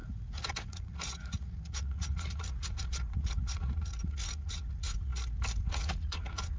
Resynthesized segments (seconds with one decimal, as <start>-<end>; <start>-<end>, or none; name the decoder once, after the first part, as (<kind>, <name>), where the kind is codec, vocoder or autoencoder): 0.0-5.1 (vocoder, Vocos); 5.7-6.6